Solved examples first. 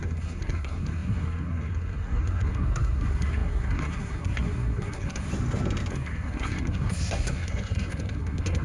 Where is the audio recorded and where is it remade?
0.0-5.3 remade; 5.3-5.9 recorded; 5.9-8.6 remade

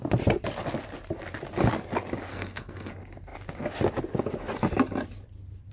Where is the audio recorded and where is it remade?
0.0-2.3 recorded; 2.3-2.9 remade; 2.9-5.7 recorded

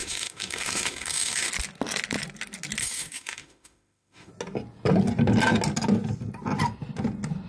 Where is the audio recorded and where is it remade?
0.0-1.5 remade; 1.5-2.8 recorded; 2.8-4.3 remade; 4.3-7.5 recorded

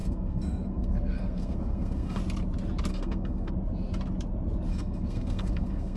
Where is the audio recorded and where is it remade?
0.0-2.2 remade; 2.2-2.9 recorded; 2.9-3.5 remade; 3.5-4.7 recorded; 4.7-6.0 remade